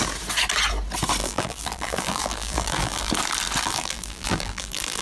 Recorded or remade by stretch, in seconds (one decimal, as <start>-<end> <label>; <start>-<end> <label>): 0.0-1.2 recorded; 1.2-3.1 remade; 3.1-3.6 recorded; 3.6-5.0 remade